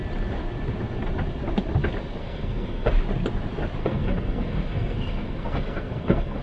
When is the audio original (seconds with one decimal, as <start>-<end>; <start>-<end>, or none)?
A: 0.0-2.2; 2.9-3.8

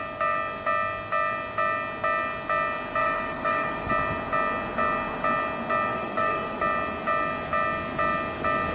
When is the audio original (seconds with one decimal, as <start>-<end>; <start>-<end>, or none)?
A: 0.0-3.0; 3.9-5.9; 6.6-8.7

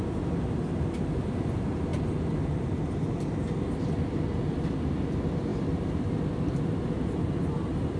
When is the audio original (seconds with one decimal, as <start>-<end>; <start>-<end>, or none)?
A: 0.0-5.5; 6.6-8.0

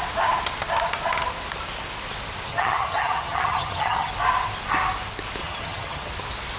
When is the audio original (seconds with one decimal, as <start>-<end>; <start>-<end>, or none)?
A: 0.0-2.5; 4.1-5.4; 6.1-6.6

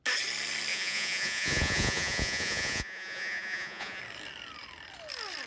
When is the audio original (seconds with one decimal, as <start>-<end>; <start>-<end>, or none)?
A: 0.0-0.7; 4.0-5.5